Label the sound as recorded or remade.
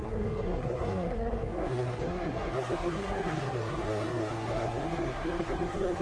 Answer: remade